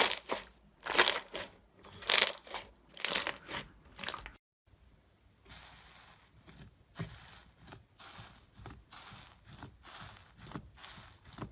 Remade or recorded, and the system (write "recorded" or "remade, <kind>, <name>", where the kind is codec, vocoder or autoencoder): recorded